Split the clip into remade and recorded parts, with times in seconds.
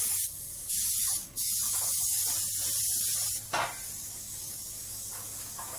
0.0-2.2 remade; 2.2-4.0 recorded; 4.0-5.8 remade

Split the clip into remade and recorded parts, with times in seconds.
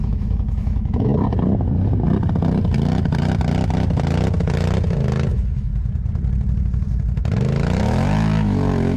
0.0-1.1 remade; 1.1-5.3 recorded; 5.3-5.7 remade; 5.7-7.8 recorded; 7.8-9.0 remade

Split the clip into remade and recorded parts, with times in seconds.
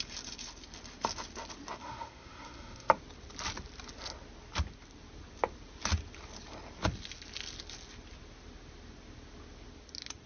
0.0-1.8 recorded; 1.8-2.9 remade; 2.9-10.3 recorded